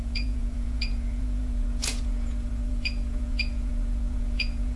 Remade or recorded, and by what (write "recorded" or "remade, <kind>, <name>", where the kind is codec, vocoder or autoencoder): remade, vocoder, Vocos